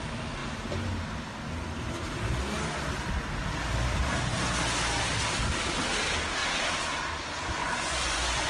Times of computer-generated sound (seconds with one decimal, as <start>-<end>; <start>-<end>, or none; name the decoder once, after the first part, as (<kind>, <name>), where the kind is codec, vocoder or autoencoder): 7.6-8.5 (vocoder, Vocos)